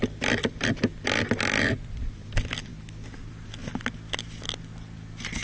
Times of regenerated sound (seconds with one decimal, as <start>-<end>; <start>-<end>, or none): 0.0-0.9; 1.6-2.7; 3.2-3.6; 4.6-5.4